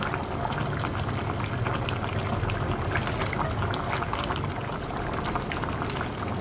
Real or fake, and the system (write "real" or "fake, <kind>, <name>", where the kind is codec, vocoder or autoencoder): real